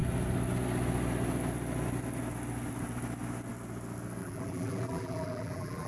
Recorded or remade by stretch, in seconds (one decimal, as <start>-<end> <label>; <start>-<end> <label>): 0.0-4.2 recorded; 4.2-5.9 remade